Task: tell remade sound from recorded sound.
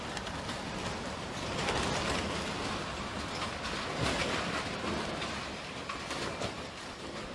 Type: recorded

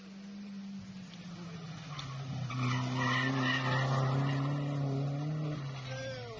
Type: recorded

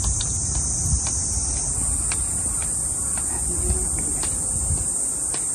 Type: recorded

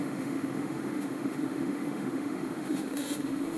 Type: remade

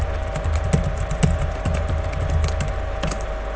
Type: recorded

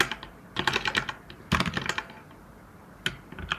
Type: recorded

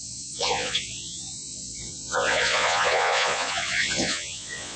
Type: remade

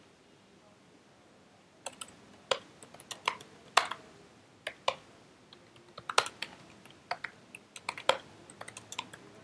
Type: recorded